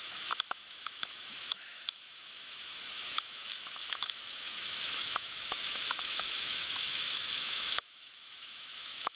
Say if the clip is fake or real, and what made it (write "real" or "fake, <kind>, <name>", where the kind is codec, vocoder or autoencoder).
fake, autoencoder, DAC-VAE